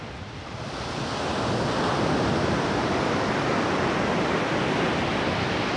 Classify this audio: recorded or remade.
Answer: recorded